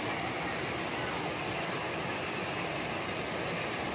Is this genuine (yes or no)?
yes